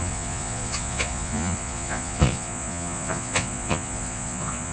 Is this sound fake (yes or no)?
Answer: yes